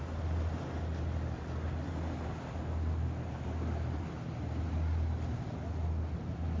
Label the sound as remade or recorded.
recorded